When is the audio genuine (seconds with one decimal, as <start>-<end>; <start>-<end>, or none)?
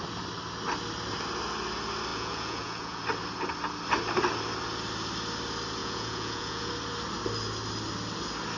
0.0-2.1; 3.0-5.8; 6.7-8.6